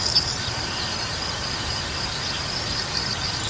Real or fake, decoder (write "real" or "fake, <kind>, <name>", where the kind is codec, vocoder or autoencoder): real